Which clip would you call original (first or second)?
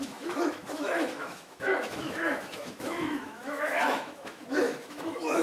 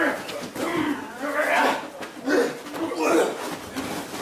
second